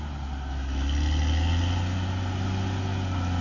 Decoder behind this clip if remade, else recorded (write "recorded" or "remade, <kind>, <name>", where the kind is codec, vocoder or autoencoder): recorded